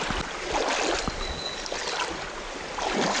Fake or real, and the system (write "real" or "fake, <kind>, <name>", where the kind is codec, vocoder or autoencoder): real